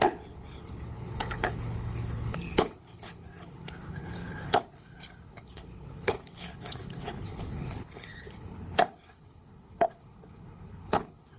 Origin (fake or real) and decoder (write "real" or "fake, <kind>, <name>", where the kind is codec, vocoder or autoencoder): fake, codec, HILCodec